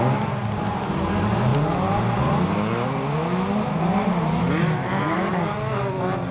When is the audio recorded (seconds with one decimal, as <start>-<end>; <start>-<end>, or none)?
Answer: 0.0-6.3